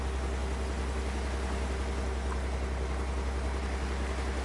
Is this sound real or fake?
real